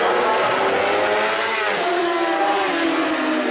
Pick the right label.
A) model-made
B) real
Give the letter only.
B